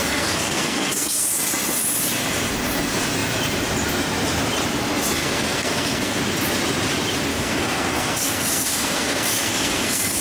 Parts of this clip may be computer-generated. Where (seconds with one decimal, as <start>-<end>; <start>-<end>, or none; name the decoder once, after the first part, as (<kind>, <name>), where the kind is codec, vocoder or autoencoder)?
0.0-1.3 (codec, SNAC); 5.2-6.2; 7.3-10.2